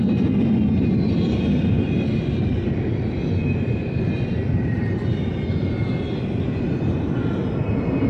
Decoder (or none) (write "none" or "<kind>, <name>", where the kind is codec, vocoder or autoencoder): none